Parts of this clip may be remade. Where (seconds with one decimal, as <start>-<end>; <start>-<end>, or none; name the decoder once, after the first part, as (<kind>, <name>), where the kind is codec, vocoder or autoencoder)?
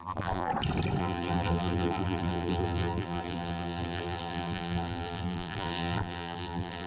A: 0.0-0.5 (vocoder, BigVGAN v2); 1.0-6.9